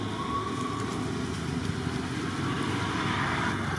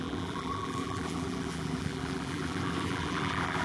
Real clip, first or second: first